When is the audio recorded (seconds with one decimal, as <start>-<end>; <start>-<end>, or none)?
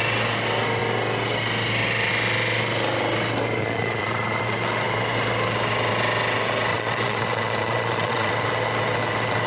0.0-3.6; 4.4-6.7; 8.3-9.5